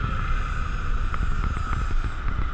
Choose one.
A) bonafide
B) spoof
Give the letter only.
A